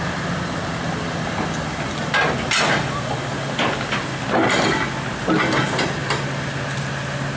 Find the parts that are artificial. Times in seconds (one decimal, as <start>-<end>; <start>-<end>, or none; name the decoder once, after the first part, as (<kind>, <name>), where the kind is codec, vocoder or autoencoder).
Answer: none